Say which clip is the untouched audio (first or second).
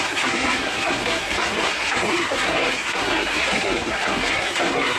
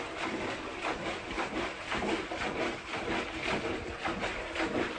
second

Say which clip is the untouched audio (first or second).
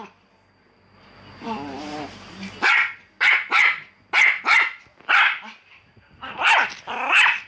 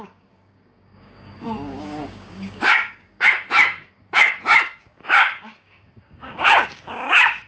first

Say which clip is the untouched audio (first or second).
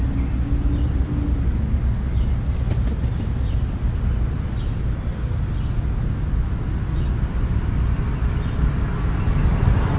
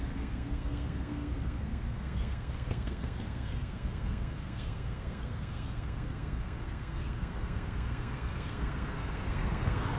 first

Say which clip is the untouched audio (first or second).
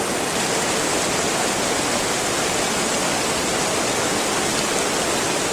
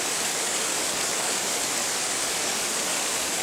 first